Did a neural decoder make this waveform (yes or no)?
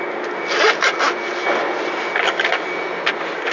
no